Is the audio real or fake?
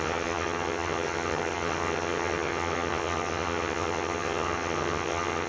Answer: fake